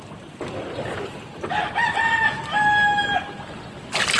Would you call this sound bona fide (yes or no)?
yes